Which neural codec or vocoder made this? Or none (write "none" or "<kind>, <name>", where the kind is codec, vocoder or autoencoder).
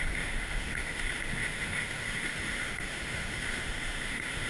autoencoder, DAC-VAE